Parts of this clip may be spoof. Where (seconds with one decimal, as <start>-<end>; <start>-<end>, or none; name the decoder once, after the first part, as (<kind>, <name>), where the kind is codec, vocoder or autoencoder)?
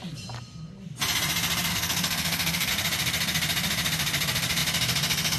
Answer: 1.7-2.7 (codec, SNAC)